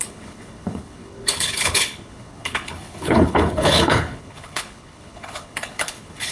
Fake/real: fake